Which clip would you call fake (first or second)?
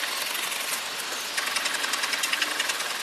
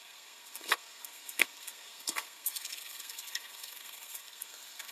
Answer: second